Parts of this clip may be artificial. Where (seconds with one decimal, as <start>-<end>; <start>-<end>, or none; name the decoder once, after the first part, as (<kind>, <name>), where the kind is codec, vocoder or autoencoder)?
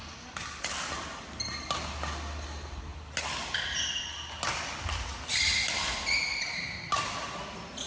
none